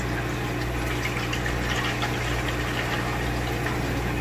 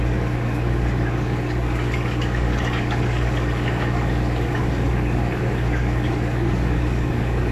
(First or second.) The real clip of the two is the first